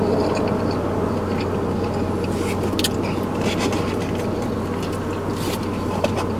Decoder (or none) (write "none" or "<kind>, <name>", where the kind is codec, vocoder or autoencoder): none